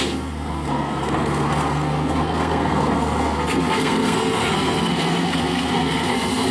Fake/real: fake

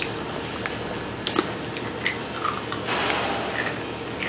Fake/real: real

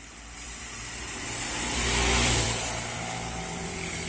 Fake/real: fake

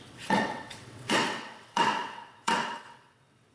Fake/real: fake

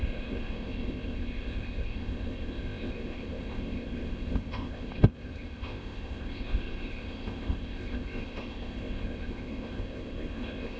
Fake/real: fake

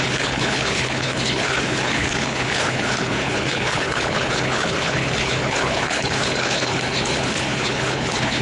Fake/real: fake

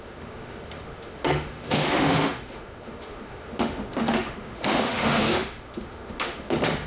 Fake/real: fake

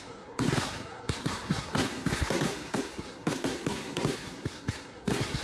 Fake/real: fake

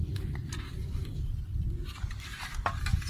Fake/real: fake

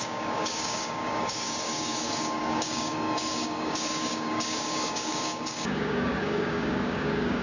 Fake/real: fake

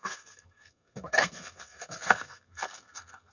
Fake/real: fake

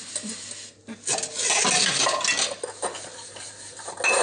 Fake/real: real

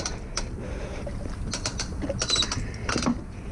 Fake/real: real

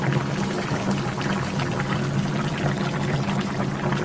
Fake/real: real